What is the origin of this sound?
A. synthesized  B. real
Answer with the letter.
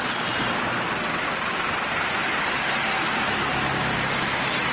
B